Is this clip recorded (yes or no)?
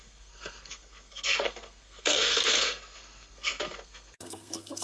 no